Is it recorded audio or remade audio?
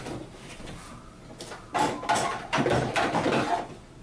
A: recorded